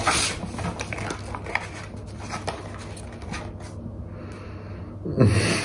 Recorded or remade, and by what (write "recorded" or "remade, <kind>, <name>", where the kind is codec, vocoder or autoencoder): recorded